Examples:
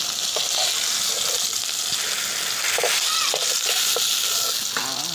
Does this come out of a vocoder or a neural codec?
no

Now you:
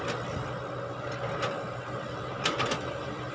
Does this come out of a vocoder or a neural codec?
yes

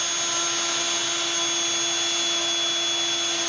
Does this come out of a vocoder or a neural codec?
no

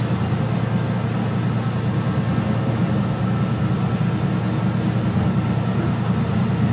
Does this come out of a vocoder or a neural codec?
no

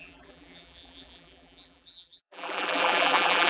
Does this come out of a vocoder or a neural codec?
yes